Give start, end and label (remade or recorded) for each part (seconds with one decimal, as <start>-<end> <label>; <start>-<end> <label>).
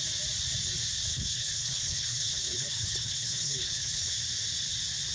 0.0-1.1 recorded; 1.1-4.2 remade; 4.2-5.1 recorded